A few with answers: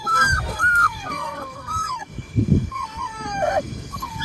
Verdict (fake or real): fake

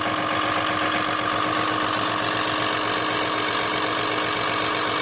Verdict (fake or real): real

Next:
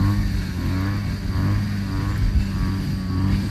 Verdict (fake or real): real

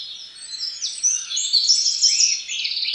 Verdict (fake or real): real